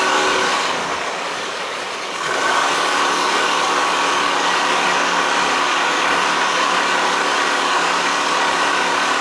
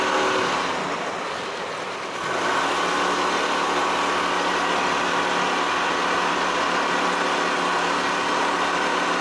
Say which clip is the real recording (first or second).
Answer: second